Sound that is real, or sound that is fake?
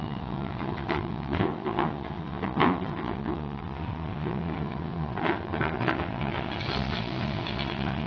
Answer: fake